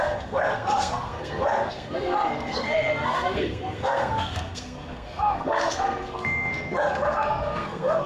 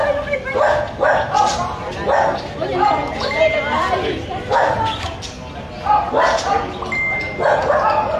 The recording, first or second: second